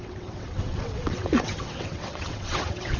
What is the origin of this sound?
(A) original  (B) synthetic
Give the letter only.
B